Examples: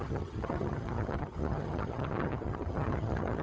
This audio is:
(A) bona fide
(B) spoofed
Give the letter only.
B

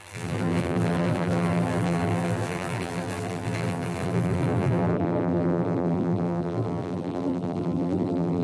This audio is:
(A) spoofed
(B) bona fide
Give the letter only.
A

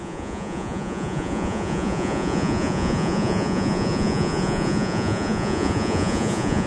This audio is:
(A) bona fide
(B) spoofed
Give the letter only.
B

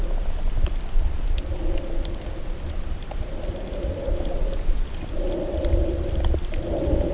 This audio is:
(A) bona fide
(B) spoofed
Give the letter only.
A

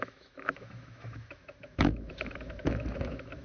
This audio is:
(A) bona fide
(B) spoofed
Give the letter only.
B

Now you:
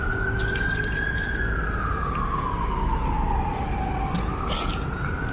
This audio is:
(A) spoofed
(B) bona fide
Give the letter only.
B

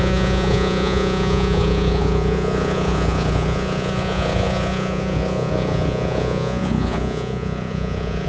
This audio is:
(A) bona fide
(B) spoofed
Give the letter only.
B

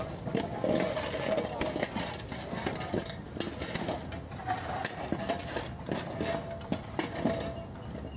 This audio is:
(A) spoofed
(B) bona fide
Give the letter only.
B